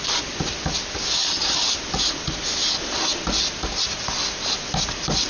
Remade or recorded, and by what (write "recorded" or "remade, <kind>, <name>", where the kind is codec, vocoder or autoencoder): recorded